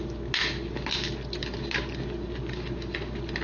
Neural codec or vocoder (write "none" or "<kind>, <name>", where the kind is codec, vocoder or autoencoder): none